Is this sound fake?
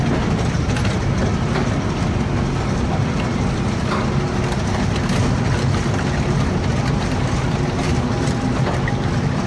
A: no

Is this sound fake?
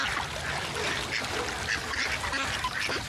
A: no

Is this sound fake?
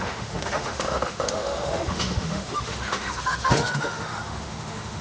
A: yes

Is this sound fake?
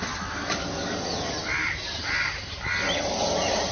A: no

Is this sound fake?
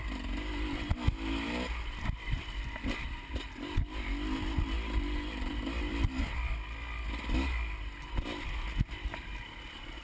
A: no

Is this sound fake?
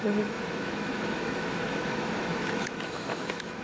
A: yes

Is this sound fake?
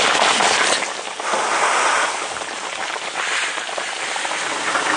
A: no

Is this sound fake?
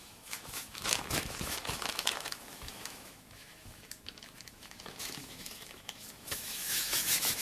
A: yes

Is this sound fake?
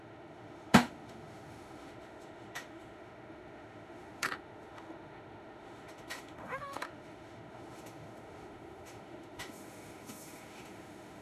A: yes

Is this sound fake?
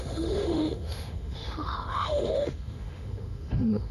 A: yes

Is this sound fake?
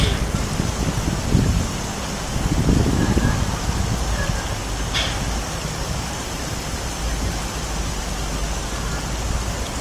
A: no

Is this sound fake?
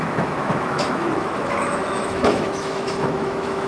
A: yes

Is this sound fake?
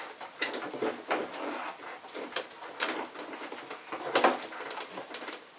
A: no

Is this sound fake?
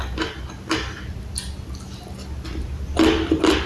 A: no